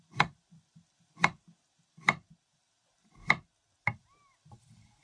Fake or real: real